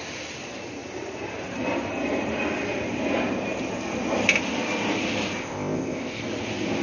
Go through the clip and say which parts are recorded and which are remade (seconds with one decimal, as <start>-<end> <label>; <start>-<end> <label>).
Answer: 0.0-5.4 recorded; 5.4-6.2 remade; 6.2-6.8 recorded